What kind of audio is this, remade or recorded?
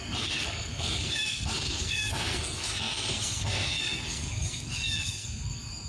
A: remade